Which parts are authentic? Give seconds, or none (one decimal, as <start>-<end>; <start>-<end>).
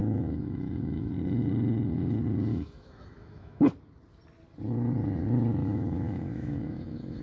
1.1-2.5; 3.7-5.6